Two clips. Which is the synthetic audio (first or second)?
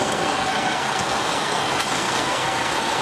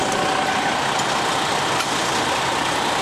first